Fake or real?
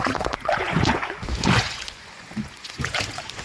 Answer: fake